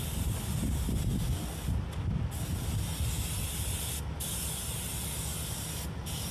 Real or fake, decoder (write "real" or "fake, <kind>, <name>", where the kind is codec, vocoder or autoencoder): real